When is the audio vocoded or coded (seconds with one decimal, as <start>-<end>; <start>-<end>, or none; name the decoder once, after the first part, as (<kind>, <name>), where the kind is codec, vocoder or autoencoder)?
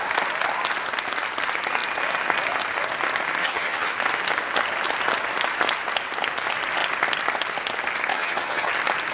3.4-3.9 (vocoder, HiFi-GAN); 8.1-8.7